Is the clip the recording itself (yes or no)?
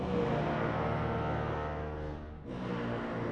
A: yes